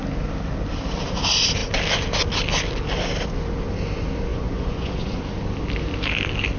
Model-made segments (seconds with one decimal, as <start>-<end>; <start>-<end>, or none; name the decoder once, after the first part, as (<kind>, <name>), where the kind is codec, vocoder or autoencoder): 4.3-5.2 (vocoder, Vocos)